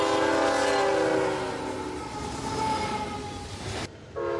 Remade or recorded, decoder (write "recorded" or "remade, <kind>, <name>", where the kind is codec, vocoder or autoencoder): recorded